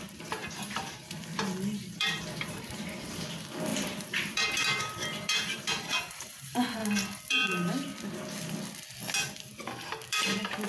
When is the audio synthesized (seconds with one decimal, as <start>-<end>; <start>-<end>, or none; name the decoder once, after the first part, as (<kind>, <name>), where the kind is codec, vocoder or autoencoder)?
0.0-6.8 (vocoder, BigVGAN v2); 7.3-7.9; 10.1-10.7